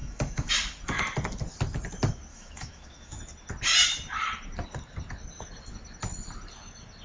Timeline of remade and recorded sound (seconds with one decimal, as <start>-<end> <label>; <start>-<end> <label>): 0.0-0.5 remade; 0.5-2.3 recorded; 2.3-3.2 remade; 3.2-7.0 recorded